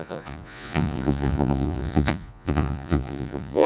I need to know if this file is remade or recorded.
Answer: remade